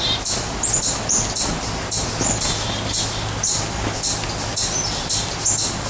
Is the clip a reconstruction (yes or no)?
no